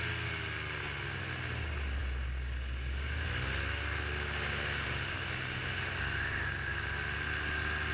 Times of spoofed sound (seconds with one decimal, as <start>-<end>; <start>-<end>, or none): none